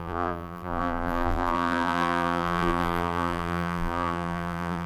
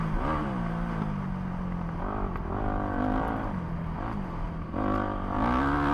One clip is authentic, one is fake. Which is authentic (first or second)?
second